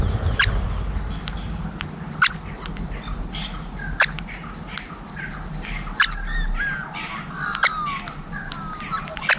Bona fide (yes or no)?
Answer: yes